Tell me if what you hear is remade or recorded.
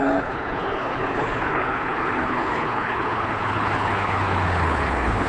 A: remade